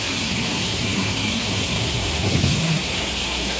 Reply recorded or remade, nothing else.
remade